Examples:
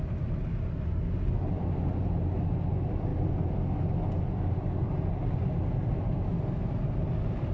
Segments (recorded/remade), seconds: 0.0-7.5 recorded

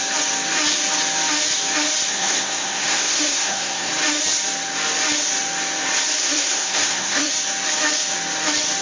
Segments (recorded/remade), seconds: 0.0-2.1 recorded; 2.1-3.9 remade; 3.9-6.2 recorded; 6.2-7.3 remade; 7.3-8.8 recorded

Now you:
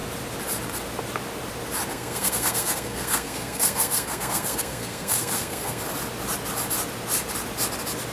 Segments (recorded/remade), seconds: 0.0-1.9 recorded; 1.9-5.8 remade; 5.8-8.1 recorded

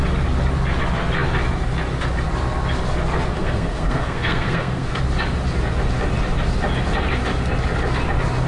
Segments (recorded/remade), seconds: 0.0-3.3 recorded; 3.3-5.0 remade; 5.0-8.5 recorded

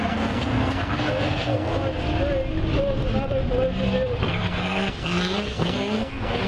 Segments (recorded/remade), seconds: 0.0-1.7 remade; 1.7-4.2 recorded; 4.2-6.5 remade

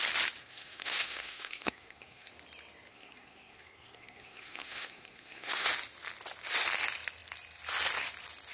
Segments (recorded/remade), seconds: 0.0-0.4 recorded; 0.4-2.3 remade; 2.3-2.9 recorded; 2.9-5.7 remade; 5.7-8.5 recorded

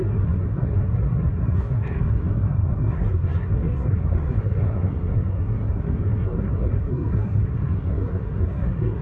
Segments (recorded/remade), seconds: 0.0-9.0 remade

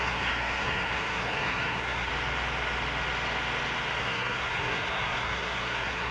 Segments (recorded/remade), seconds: 0.0-2.1 remade; 2.1-4.0 recorded; 4.0-6.1 remade